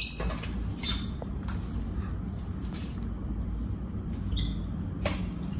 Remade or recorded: recorded